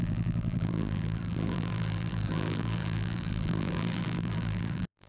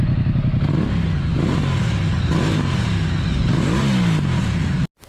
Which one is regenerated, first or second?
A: first